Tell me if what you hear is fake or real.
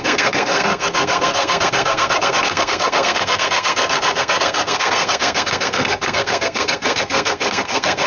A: fake